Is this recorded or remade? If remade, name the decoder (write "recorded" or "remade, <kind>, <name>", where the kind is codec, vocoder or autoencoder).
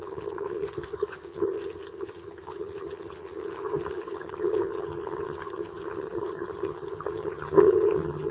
remade, vocoder, HiFi-GAN